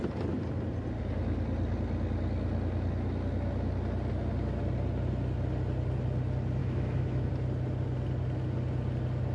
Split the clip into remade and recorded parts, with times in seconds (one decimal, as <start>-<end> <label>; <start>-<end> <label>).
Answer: 0.0-6.6 recorded; 6.6-7.3 remade; 7.3-9.3 recorded